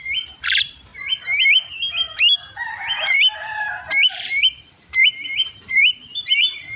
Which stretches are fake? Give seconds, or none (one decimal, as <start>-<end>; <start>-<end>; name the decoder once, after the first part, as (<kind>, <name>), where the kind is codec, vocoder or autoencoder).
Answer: 0.0-6.8 (vocoder, BigVGAN v2)

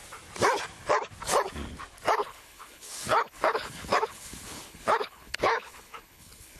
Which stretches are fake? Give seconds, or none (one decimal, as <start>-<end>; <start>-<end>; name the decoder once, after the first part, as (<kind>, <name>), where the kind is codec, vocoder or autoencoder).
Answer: 2.2-6.6 (codec, HILCodec)

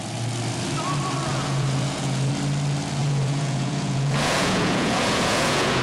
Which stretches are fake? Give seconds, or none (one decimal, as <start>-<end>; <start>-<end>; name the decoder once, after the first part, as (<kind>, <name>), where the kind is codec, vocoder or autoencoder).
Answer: 1.3-2.3 (vocoder, Vocos); 3.0-5.8

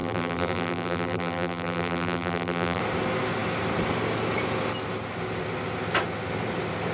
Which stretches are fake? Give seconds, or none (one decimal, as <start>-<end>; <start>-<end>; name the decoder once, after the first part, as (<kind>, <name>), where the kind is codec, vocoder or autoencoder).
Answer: 0.0-2.8 (vocoder, BigVGAN v2)

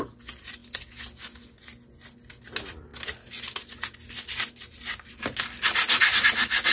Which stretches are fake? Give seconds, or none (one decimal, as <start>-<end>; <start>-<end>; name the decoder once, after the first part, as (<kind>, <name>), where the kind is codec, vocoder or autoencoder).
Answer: none

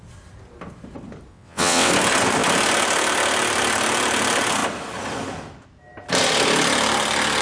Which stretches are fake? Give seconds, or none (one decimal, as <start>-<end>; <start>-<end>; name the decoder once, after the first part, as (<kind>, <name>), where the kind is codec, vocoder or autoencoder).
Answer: 1.3-1.9 (vocoder, WaveNeXt)

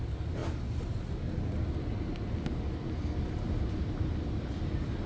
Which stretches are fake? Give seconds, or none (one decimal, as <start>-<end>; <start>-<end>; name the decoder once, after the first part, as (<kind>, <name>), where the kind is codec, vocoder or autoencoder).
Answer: none

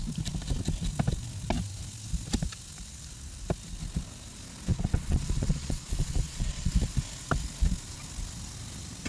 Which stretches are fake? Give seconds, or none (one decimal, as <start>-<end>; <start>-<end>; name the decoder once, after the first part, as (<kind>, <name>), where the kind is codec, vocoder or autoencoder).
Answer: 4.7-6.7 (vocoder, Vocos)